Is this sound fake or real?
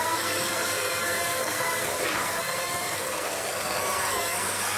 fake